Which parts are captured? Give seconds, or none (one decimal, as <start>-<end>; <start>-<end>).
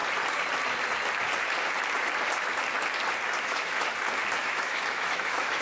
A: 0.0-3.4; 3.9-4.4